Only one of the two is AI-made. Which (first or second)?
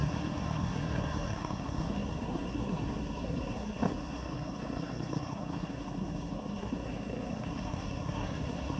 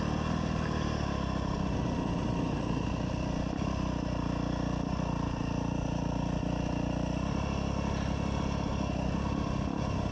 first